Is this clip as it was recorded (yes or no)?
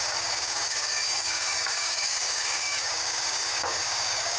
no